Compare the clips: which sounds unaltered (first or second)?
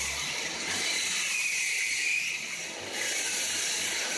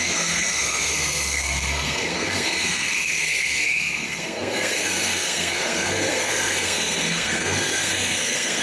first